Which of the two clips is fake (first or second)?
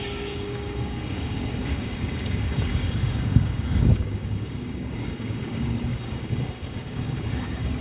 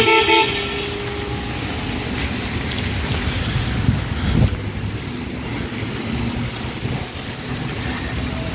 first